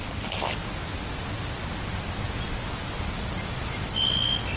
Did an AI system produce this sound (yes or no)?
no